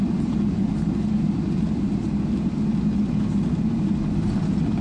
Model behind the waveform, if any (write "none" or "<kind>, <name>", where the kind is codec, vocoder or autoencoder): none